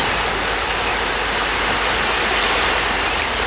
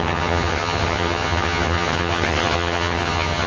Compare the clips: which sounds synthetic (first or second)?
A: second